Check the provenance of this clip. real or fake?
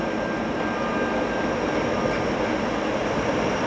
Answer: real